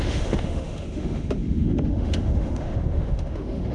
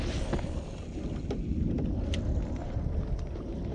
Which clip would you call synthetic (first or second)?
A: first